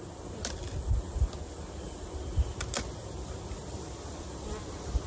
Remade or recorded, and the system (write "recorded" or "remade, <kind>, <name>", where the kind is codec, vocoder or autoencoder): recorded